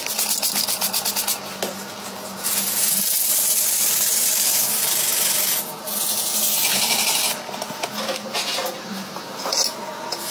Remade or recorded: recorded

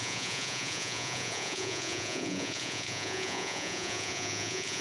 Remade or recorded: remade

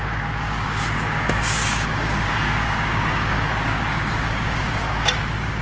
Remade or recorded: remade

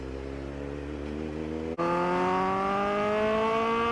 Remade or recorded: recorded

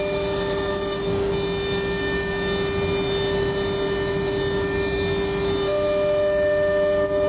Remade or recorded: recorded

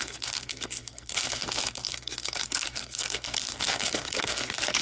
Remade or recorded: remade